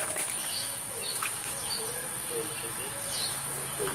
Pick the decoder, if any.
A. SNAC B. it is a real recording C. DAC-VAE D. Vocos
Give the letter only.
C